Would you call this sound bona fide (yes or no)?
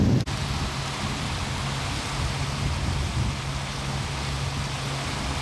yes